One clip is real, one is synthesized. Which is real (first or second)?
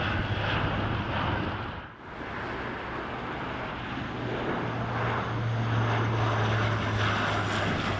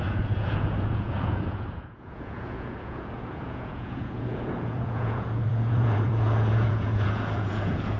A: first